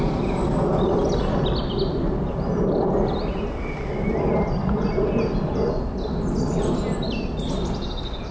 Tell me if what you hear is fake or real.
real